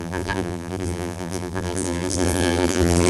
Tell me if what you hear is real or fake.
fake